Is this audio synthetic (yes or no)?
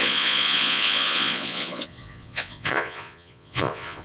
yes